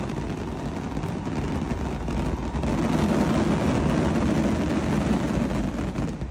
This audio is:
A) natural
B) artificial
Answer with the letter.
A